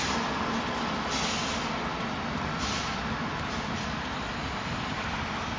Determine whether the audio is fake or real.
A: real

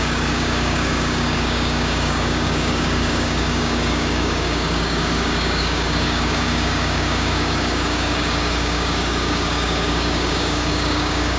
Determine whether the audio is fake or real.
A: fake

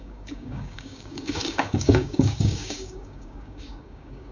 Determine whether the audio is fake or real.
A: fake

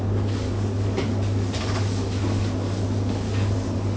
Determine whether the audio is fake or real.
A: fake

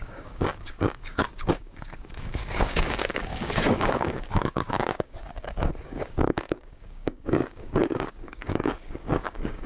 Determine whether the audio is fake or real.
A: fake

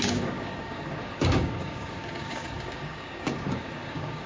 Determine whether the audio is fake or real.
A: fake